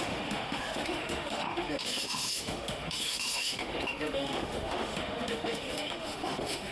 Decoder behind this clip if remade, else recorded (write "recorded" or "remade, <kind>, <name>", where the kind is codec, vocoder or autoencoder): remade, autoencoder, DAC-VAE